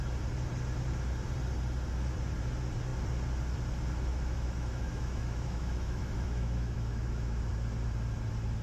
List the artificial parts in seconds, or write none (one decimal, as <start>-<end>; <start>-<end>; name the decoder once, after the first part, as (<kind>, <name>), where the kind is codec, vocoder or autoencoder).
4.1-7.4 (autoencoder, DAC-VAE)